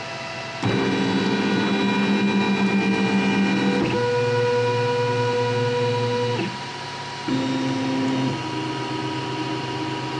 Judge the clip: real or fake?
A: real